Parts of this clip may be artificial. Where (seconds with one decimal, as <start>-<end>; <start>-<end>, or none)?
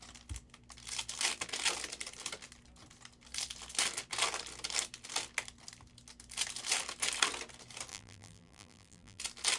7.9-9.2